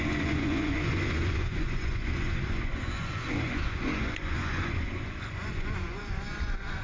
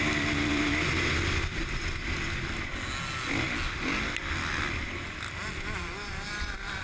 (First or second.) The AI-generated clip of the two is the first